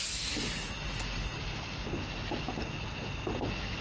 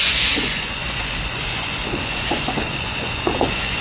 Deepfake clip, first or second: second